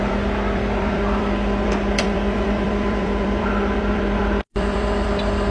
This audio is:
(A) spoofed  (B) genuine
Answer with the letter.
A